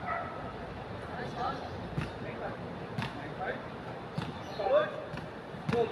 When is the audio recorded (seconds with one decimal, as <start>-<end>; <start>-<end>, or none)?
0.0-5.9